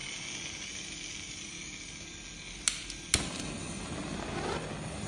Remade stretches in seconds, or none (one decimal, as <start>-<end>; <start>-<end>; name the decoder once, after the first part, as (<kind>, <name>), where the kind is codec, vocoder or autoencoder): none